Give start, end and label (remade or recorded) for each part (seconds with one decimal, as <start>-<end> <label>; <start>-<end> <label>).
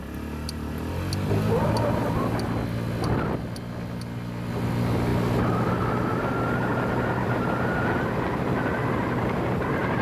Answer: 0.0-10.0 recorded